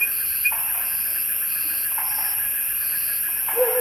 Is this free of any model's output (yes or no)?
no